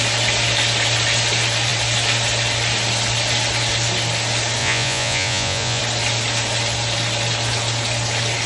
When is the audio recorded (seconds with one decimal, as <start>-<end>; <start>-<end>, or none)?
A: 0.0-4.6; 5.8-8.5